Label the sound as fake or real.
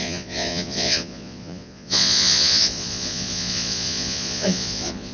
fake